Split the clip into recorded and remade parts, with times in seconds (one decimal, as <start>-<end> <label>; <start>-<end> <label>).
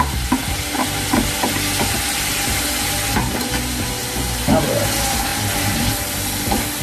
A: 0.0-6.8 recorded